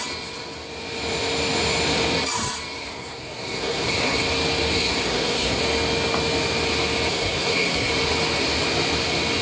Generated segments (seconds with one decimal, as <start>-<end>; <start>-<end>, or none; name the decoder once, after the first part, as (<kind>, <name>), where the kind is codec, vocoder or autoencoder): 2.8-4.3 (codec, SNAC); 4.7-5.6; 7.1-7.9